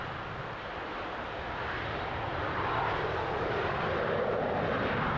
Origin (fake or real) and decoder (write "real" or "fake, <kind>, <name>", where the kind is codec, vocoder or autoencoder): real